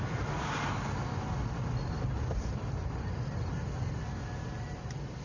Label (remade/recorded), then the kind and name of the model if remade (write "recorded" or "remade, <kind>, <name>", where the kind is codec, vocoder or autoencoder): recorded